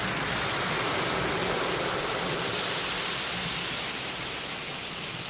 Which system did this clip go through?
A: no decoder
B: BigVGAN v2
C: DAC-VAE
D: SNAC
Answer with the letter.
A